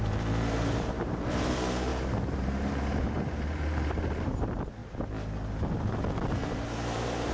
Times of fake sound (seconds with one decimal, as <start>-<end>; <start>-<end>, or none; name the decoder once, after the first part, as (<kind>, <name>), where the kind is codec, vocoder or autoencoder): 0.0-1.9 (vocoder, BigVGAN v2); 2.4-4.8; 6.3-7.3